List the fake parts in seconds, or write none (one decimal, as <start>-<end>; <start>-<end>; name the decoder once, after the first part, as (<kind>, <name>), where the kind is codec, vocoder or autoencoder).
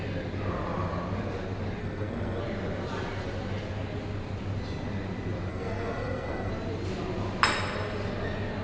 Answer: 1.8-2.4 (codec, SNAC); 5.5-6.5